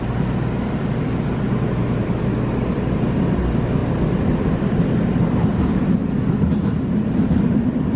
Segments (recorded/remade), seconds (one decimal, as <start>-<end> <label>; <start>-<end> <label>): 0.0-8.0 recorded